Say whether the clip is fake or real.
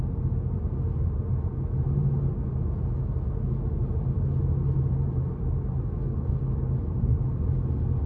real